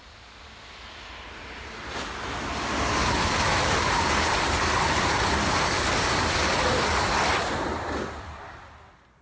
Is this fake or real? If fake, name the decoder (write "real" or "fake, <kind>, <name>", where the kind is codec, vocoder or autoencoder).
real